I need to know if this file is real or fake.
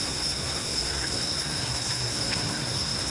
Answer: fake